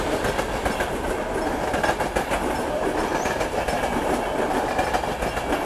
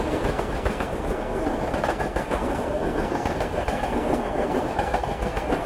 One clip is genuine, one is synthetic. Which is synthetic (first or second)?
second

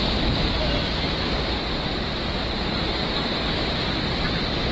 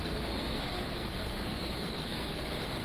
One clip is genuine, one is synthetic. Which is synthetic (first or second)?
second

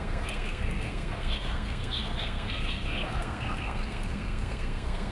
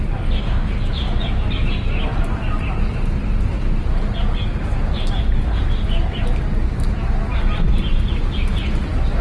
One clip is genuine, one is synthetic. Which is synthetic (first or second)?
first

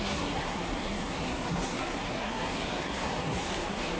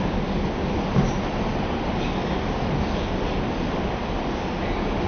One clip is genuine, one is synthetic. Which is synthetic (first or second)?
first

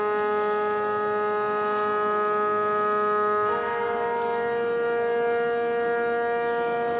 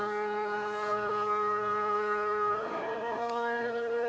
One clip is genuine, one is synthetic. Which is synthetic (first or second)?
second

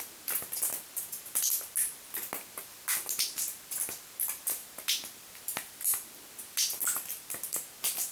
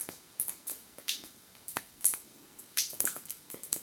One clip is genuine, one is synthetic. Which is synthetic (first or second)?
second